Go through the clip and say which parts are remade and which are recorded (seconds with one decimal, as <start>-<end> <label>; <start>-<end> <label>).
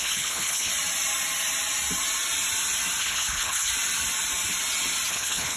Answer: 0.0-0.7 remade; 0.7-3.0 recorded; 3.0-3.7 remade; 3.7-5.1 recorded; 5.1-5.6 remade